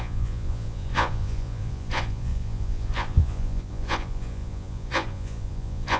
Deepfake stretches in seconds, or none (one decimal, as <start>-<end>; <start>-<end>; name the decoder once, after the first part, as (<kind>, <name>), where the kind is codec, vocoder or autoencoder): 0.0-6.0 (vocoder, Vocos)